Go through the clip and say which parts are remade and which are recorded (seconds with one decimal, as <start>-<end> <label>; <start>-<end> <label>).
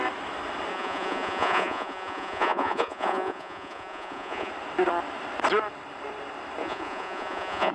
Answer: 0.0-0.7 recorded; 0.7-4.5 remade; 4.5-6.6 recorded; 6.6-7.7 remade